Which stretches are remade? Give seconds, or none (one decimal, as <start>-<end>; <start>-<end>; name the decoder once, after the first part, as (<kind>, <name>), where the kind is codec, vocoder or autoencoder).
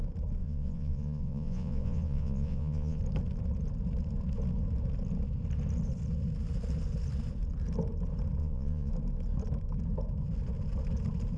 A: 0.4-3.0 (vocoder, Vocos); 8.4-8.9